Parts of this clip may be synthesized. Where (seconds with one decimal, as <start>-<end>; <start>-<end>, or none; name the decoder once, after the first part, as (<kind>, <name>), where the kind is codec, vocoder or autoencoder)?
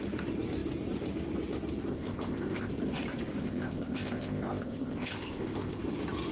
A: 1.9-2.7 (codec, ZipCodec); 3.4-5.8